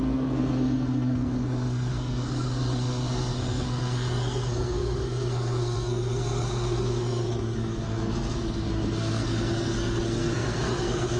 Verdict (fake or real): fake